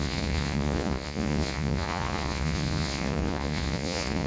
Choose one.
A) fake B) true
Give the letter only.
A